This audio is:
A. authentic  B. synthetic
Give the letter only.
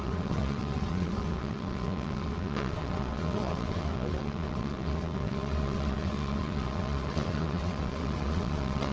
B